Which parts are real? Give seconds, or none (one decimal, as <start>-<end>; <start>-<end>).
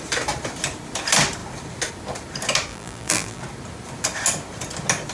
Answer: 0.0-2.7; 3.4-5.1